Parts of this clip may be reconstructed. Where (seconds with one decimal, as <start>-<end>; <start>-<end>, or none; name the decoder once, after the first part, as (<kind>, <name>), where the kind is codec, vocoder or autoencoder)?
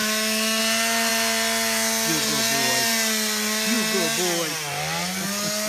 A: 0.0-0.6 (autoencoder, DAC-VAE)